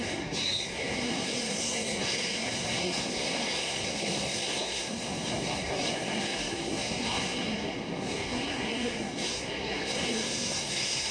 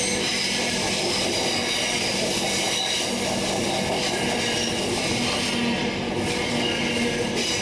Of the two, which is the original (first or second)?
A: second